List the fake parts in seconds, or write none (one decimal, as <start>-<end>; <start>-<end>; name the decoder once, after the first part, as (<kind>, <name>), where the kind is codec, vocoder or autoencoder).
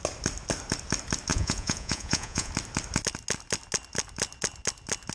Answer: 1.3-2.5 (vocoder, Vocos)